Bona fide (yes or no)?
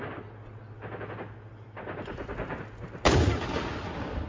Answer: yes